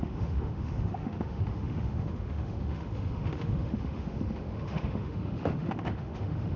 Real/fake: fake